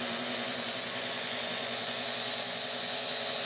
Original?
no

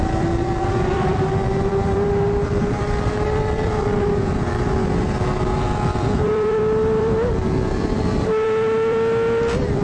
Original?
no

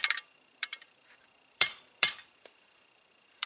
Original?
no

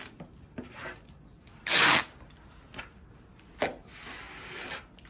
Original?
yes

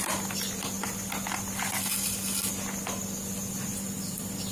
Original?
yes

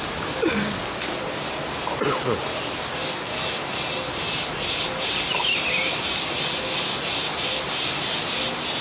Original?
yes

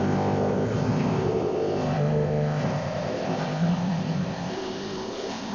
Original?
no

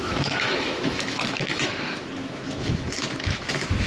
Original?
no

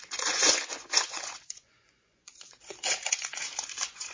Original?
no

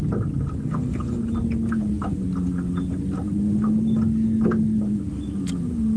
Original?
yes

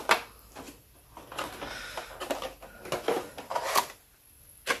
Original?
yes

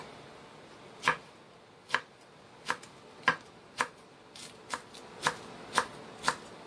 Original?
yes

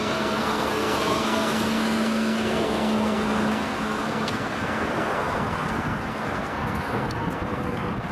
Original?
no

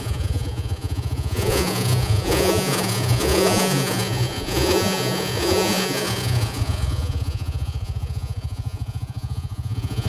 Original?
no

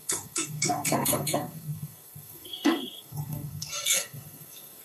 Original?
no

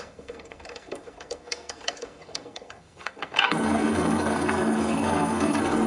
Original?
no